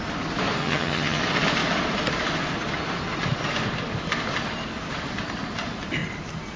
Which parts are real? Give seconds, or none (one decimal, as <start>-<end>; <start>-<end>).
0.0-0.6; 1.2-6.6